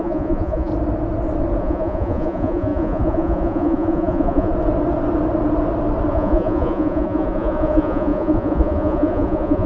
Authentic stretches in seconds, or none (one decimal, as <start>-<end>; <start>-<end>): 0.7-1.6; 4.5-6.1